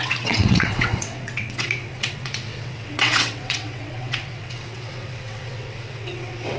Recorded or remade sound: remade